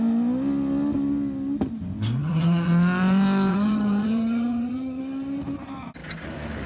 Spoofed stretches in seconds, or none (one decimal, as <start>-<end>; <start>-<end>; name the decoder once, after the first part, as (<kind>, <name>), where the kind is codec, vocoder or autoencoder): 2.2-2.7 (vocoder, HiFi-GAN); 3.5-5.0